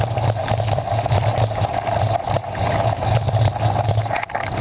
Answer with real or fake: real